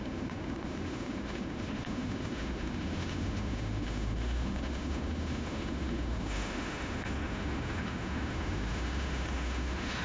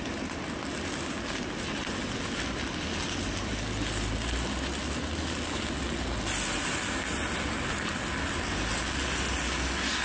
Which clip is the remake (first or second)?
first